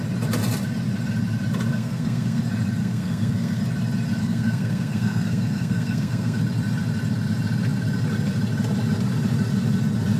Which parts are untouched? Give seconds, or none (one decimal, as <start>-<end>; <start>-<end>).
0.0-1.7; 2.4-2.8; 3.6-4.2; 6.4-10.2